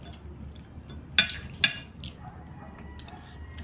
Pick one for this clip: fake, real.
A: real